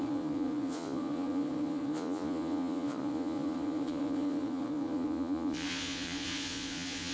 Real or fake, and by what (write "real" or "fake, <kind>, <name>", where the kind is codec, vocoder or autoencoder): fake, vocoder, Vocos